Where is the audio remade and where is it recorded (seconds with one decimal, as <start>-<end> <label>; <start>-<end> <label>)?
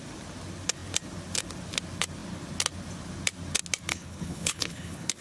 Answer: 0.0-3.9 recorded; 3.9-5.2 remade